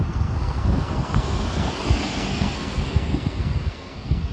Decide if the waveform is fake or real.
fake